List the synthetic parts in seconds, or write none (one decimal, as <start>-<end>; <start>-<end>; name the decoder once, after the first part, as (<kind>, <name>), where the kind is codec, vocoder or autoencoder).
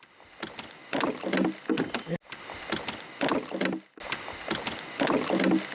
none